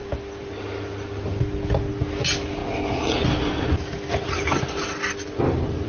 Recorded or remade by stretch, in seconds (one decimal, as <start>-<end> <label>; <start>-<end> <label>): 0.0-5.9 recorded